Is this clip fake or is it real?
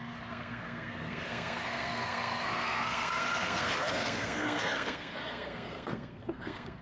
fake